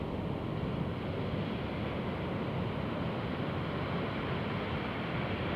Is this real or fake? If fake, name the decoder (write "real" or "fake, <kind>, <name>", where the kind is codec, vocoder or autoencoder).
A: real